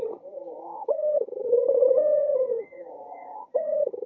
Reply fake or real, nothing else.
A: fake